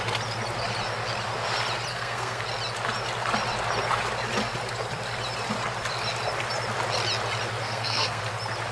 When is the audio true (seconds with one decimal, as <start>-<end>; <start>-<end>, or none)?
0.0-1.9; 2.4-7.6; 8.2-8.7